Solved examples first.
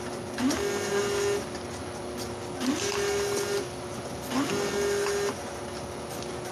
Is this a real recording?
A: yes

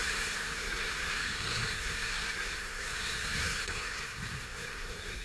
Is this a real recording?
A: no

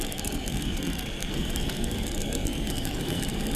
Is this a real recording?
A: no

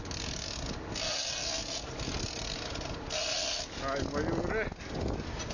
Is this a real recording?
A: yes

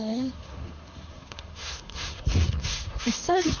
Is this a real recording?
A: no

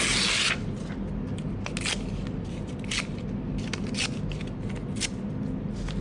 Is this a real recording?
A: yes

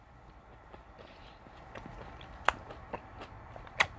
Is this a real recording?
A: yes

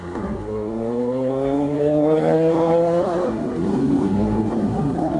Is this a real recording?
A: no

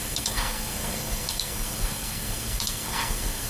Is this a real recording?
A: no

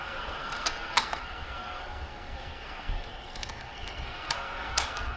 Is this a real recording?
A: no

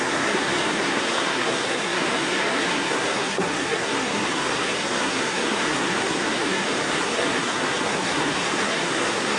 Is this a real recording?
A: no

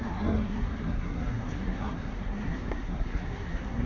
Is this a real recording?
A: no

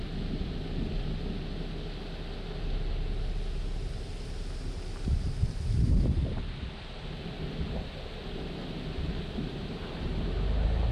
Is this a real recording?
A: yes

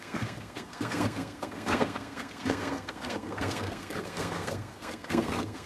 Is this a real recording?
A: no